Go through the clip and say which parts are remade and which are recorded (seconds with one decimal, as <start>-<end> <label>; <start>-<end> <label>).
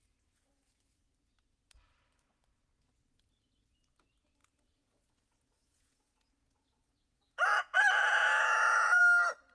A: 0.0-4.4 recorded; 4.4-9.0 remade; 9.0-9.5 recorded